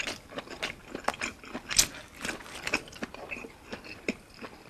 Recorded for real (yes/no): yes